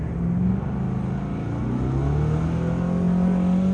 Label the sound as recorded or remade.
recorded